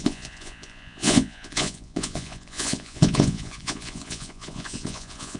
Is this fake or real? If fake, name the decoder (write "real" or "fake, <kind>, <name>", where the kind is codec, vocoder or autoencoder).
fake, vocoder, Vocos